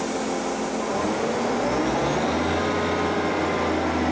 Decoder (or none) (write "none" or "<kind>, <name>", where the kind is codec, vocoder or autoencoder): none